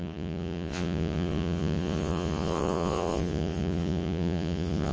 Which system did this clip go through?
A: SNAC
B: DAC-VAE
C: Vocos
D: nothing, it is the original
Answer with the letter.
C